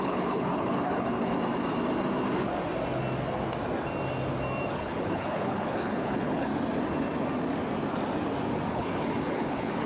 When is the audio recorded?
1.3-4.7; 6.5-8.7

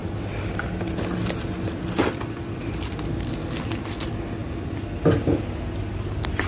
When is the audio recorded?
0.0-6.5